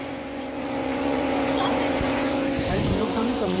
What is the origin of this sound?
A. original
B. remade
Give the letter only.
B